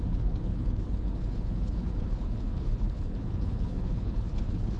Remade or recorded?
remade